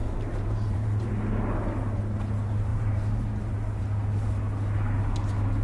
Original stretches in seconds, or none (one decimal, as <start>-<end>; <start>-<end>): 1.1-2.7; 3.8-5.6